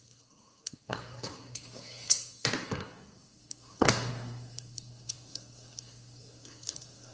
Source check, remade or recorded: remade